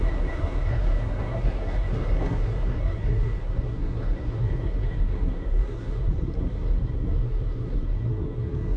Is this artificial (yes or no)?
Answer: yes